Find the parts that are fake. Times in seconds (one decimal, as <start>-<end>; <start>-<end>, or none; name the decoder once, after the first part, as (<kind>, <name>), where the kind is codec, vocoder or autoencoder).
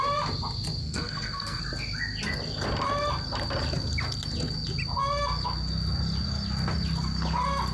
0.8-1.6 (codec, SNAC)